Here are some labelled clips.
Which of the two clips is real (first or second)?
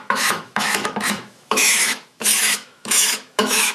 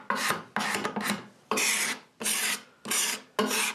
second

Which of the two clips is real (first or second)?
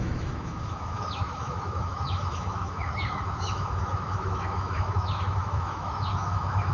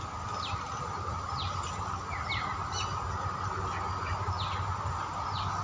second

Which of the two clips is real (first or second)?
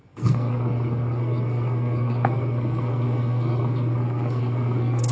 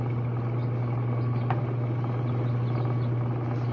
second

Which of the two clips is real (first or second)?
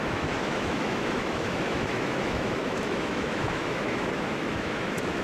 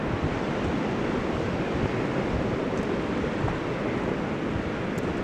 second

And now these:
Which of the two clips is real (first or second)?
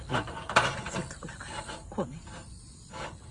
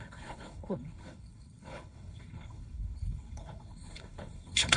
first